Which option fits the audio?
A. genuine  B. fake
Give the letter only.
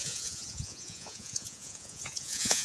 B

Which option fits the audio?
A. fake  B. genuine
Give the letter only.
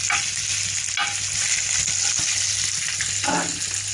B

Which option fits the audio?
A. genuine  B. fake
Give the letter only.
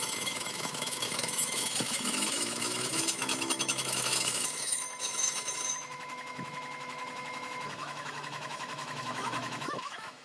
B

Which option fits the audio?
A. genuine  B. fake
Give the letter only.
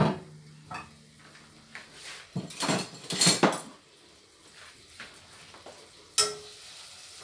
A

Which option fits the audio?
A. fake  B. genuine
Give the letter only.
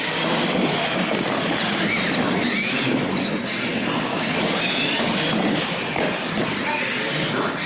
B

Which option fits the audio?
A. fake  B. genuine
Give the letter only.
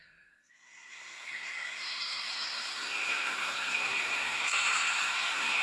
A